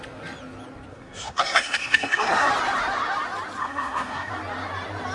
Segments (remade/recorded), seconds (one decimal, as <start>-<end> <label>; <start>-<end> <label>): 0.0-0.9 recorded; 0.9-2.5 remade; 2.5-3.6 recorded; 3.6-4.3 remade; 4.3-5.1 recorded